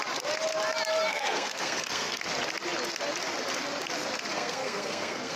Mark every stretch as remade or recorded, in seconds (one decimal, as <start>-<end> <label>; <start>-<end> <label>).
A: 0.0-1.1 recorded; 1.1-2.2 remade; 2.2-4.3 recorded; 4.3-5.4 remade